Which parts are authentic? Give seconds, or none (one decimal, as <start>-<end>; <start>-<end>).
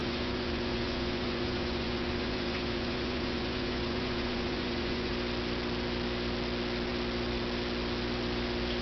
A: 5.1-8.8